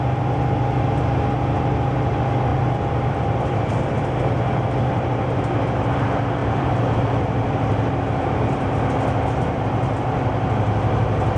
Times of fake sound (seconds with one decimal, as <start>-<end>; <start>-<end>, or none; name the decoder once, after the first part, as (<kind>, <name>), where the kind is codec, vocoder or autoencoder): 2.5-3.7 (vocoder, BigVGAN v2); 6.4-7.9